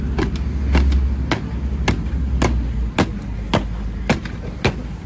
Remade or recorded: recorded